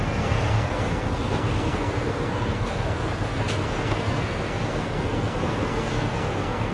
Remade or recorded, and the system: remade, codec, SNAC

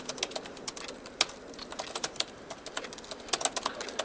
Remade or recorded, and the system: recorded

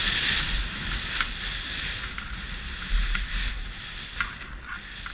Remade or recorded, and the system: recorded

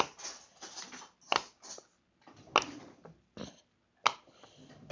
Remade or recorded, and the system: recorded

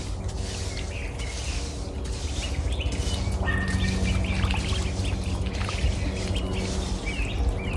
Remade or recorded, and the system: recorded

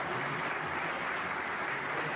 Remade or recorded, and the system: recorded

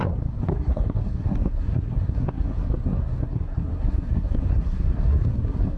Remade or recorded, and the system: remade, codec, SNAC